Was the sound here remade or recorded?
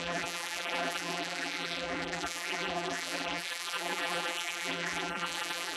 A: remade